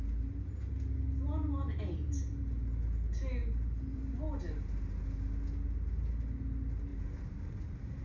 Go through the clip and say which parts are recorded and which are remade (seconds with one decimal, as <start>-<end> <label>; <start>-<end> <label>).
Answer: 0.0-3.4 recorded; 3.4-4.2 remade; 4.2-8.0 recorded